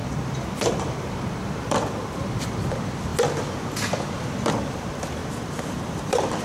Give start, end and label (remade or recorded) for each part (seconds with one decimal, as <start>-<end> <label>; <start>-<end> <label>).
0.0-3.1 remade; 3.1-4.5 recorded; 4.5-6.4 remade